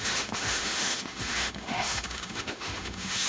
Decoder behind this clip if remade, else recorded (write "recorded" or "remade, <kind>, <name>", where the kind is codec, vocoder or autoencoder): remade, autoencoder, DAC-VAE